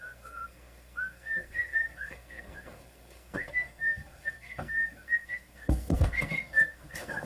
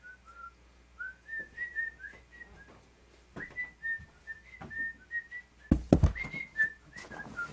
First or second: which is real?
second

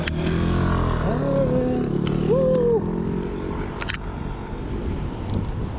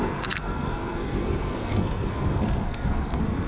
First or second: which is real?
first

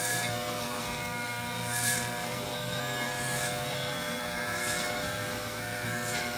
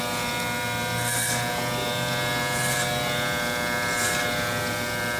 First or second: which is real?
second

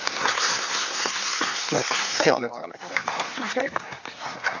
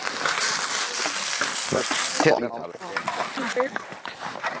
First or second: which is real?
second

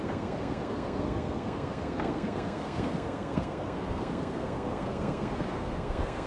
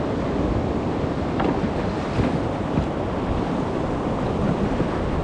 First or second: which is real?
second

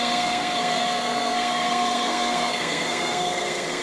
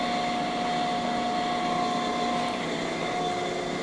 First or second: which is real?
second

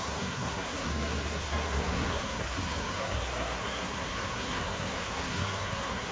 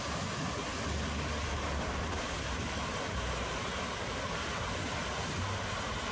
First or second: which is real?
second